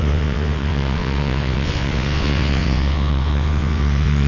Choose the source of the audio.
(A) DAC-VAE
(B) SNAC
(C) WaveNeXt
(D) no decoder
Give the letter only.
C